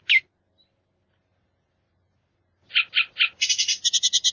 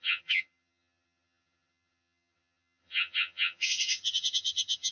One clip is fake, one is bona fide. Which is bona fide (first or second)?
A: first